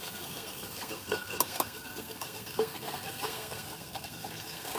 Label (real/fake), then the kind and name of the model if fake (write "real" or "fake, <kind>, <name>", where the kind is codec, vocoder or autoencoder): fake, codec, SNAC